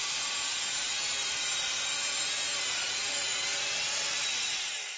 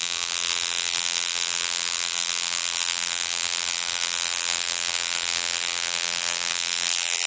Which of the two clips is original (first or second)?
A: first